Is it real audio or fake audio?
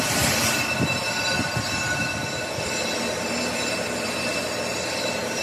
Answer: real